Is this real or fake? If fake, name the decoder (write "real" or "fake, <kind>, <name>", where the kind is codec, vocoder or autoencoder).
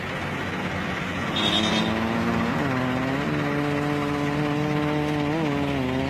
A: real